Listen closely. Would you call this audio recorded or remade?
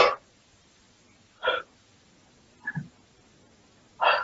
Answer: recorded